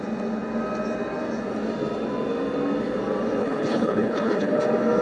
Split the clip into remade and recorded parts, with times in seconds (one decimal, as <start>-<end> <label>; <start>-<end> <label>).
0.0-3.4 recorded; 3.4-4.6 remade; 4.6-5.0 recorded

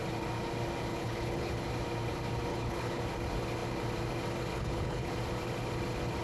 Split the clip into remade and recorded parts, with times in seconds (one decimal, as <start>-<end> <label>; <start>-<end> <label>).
0.0-0.9 recorded; 0.9-1.5 remade; 1.5-2.5 recorded; 2.5-3.0 remade; 3.0-4.5 recorded; 4.5-5.1 remade; 5.1-6.2 recorded

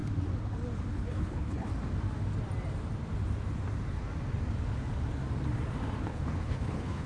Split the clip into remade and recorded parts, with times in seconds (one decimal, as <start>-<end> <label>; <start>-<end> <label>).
0.0-0.9 recorded; 0.9-1.7 remade; 1.7-6.0 recorded; 6.0-7.1 remade

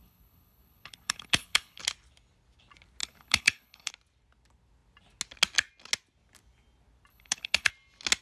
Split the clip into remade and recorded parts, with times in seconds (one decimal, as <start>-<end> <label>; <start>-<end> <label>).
0.0-1.8 remade; 1.8-3.0 recorded; 3.0-3.9 remade; 3.9-7.1 recorded; 7.1-7.7 remade; 7.7-8.2 recorded